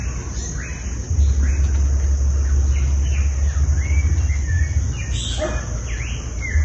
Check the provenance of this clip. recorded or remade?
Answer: recorded